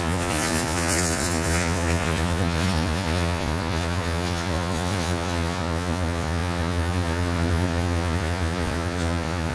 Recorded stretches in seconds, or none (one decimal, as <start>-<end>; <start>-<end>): none